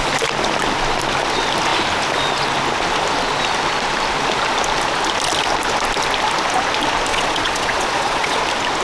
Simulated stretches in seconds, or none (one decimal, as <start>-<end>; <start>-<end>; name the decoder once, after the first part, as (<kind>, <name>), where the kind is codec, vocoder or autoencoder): 7.1-8.4 (vocoder, Vocos)